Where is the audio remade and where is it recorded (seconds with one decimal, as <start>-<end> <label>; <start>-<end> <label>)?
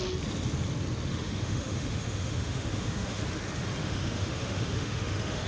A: 0.0-1.1 recorded; 1.1-3.2 remade; 3.2-3.8 recorded; 3.8-5.5 remade